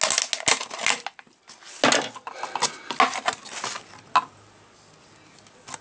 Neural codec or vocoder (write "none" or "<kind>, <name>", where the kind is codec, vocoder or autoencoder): none